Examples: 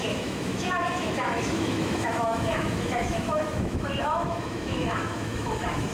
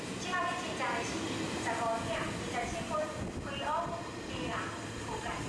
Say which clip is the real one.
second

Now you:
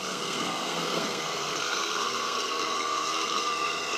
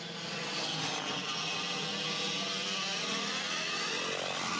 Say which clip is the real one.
second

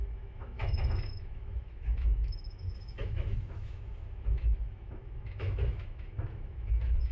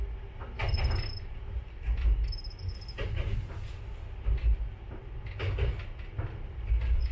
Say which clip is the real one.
second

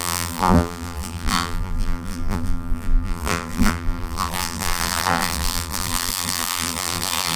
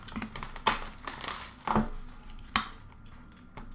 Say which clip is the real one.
second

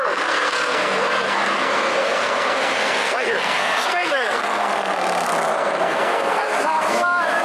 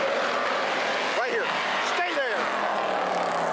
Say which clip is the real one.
second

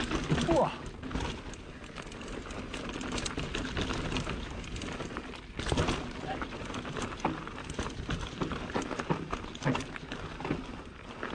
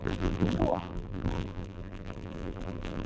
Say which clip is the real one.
first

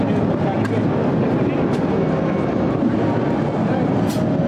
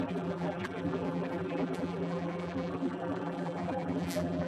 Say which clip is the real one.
first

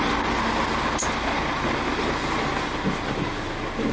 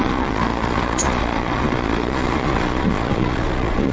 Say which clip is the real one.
first